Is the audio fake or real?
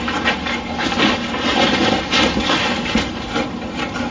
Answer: real